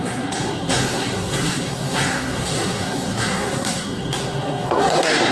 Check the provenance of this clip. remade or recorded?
remade